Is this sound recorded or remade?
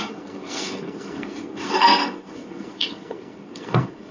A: remade